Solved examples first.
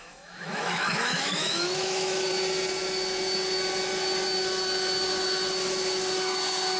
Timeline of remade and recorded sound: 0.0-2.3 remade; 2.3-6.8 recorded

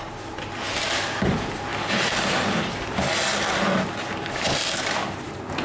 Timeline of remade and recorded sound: 0.0-5.6 recorded

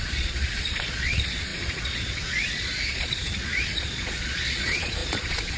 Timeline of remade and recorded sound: 0.0-5.6 remade